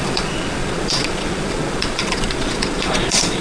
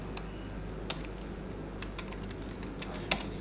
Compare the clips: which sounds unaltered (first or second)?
second